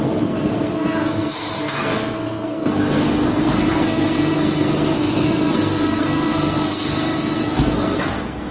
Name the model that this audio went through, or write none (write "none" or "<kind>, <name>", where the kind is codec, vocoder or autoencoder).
codec, SNAC